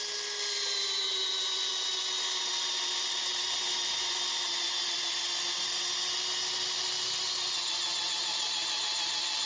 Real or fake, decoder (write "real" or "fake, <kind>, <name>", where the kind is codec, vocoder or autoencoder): real